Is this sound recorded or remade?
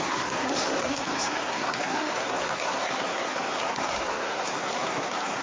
remade